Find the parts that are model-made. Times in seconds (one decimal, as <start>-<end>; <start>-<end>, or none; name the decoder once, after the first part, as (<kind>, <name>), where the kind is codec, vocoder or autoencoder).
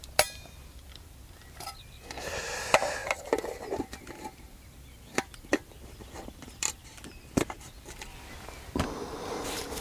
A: 0.0-6.8 (vocoder, BigVGAN v2); 7.6-8.1; 8.8-9.8